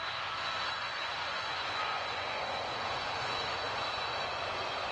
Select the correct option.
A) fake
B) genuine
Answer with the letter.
A